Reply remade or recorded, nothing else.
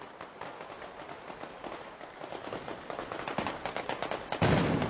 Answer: recorded